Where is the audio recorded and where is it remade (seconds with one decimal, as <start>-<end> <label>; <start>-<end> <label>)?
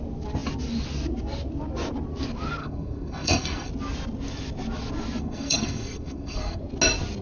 0.0-2.6 recorded; 2.6-3.7 remade; 3.7-5.2 recorded; 5.2-6.6 remade; 6.6-7.2 recorded